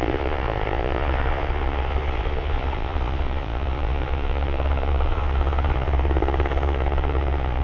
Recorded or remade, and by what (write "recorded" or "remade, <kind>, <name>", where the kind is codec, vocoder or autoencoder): remade, vocoder, Vocos